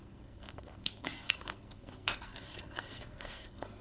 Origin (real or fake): fake